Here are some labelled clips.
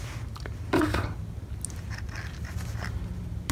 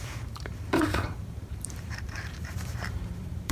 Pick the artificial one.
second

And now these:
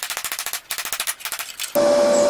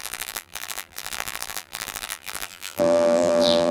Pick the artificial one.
second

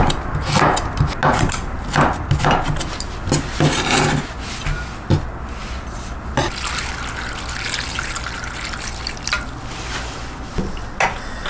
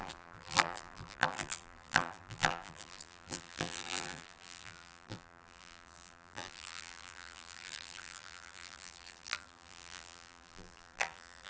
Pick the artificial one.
second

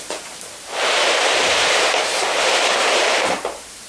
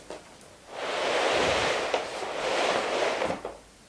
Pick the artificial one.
first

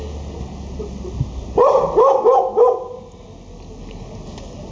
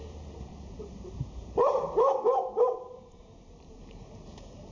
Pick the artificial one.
second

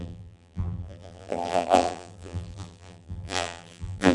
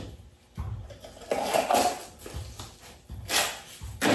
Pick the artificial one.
first